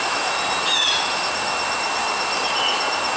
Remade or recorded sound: recorded